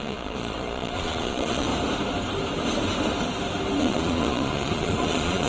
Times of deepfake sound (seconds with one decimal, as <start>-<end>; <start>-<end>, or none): 0.0-1.7; 3.8-5.5